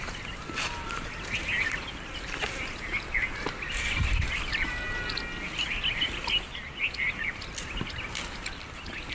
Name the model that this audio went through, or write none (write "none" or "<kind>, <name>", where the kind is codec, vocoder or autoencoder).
none